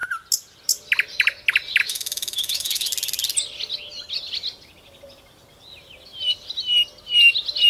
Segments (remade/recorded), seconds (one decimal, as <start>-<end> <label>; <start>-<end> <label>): 0.0-1.8 recorded; 1.8-2.9 remade; 2.9-7.7 recorded